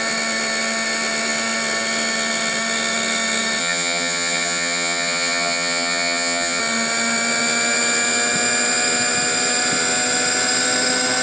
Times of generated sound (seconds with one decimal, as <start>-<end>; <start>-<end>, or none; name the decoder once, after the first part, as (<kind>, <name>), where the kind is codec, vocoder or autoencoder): 3.6-6.6 (vocoder, HiFi-GAN)